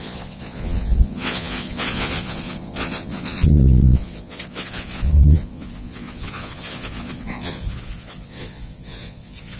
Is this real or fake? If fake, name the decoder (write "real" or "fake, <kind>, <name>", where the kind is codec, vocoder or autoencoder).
fake, vocoder, Vocos